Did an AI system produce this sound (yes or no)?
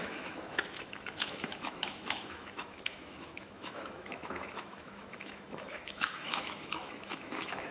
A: yes